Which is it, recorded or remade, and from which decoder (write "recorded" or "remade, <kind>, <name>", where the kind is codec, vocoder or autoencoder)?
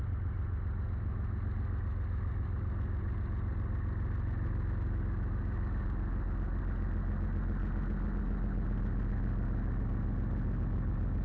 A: recorded